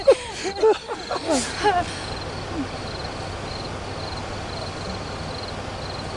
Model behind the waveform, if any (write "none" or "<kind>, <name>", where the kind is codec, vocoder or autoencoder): none